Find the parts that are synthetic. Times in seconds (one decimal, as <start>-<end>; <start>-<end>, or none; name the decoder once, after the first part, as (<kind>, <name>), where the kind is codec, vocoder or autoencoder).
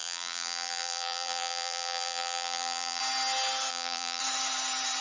0.0-3.0 (vocoder, BigVGAN v2); 3.7-4.2